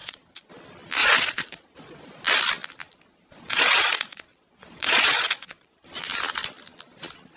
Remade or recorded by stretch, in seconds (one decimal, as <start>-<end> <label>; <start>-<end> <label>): 0.0-0.5 remade; 0.5-1.0 recorded; 1.0-2.2 remade; 2.2-3.1 recorded; 3.1-5.9 remade; 5.9-7.4 recorded